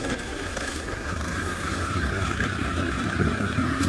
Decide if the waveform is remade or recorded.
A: remade